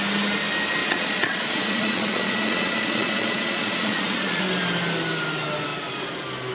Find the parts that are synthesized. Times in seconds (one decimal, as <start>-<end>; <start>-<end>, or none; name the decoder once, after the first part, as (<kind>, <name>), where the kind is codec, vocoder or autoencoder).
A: 0.8-4.4 (vocoder, Vocos)